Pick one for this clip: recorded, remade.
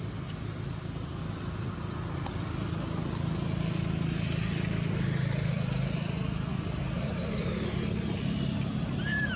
recorded